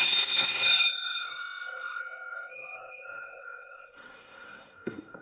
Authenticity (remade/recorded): remade